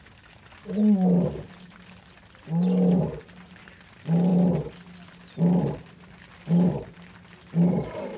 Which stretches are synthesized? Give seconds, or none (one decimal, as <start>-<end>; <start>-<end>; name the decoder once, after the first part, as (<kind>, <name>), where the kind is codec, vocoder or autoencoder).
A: none